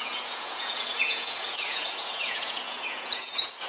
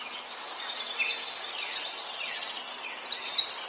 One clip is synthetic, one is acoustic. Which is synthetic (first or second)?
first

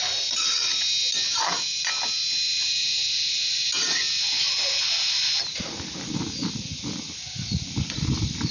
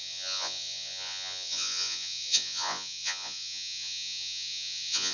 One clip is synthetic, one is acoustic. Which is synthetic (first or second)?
second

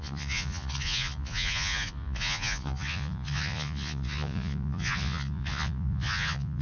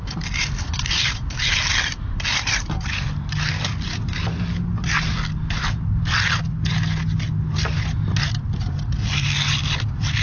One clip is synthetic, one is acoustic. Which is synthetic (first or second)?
first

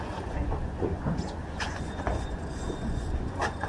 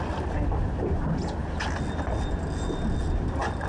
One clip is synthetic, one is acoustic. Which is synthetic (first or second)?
first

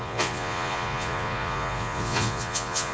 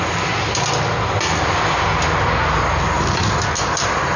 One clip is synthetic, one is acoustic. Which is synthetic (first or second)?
first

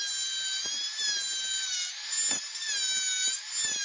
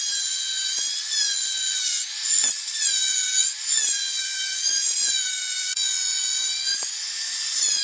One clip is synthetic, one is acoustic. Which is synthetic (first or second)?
second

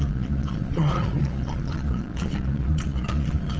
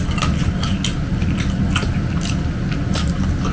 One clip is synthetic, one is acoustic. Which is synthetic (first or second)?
first